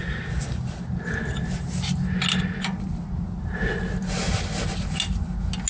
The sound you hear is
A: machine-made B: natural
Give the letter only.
B